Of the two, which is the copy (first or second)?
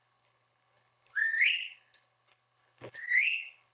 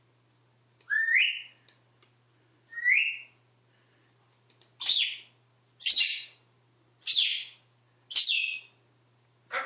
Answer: first